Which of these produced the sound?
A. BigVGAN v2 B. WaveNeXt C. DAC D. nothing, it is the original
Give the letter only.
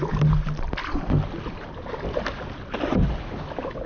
D